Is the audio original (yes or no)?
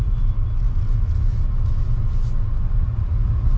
yes